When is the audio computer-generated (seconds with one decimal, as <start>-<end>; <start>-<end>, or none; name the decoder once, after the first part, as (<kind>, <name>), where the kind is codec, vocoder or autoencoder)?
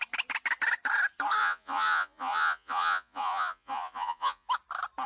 1.4-4.5 (vocoder, Vocos)